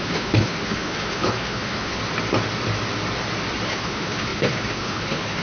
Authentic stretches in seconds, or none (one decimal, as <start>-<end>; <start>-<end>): 2.0-3.7